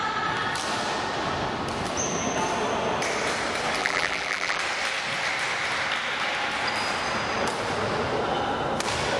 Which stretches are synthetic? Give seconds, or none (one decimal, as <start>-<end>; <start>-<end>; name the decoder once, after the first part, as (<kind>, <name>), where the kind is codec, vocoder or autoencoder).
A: 3.8-4.6 (vocoder, BigVGAN v2)